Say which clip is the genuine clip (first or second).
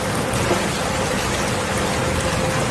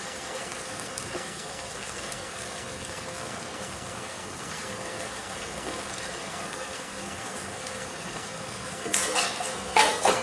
first